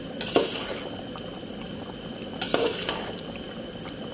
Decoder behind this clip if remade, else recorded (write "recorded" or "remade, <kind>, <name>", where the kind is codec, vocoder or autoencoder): recorded